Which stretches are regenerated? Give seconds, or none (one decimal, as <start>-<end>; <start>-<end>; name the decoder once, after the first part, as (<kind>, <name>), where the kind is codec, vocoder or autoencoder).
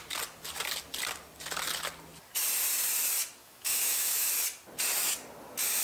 3.4-4.3 (autoencoder, DAC-VAE)